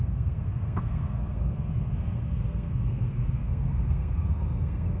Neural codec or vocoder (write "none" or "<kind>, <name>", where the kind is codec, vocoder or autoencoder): codec, SNAC